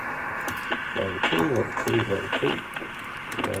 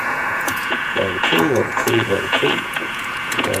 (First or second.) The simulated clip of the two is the second